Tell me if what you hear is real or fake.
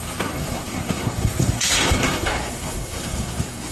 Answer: fake